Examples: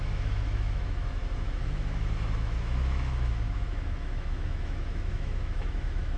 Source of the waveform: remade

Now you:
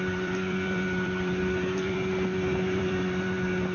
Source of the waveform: remade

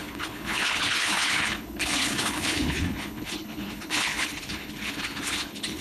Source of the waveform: remade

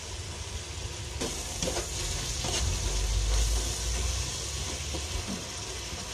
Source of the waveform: recorded